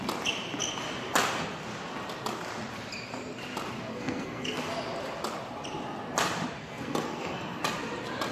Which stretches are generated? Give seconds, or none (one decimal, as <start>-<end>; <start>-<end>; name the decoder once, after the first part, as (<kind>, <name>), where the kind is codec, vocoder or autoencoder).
3.9-4.7 (codec, SNAC); 6.6-7.6